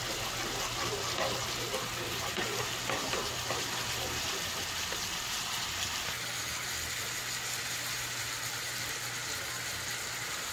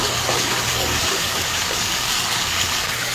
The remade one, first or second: second